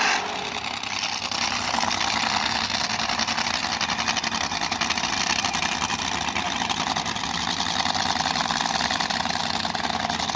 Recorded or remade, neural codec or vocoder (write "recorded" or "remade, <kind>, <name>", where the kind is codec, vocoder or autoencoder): recorded